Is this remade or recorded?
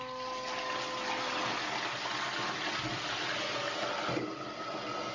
recorded